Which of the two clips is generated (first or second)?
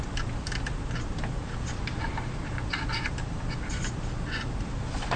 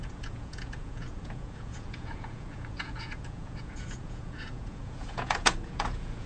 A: second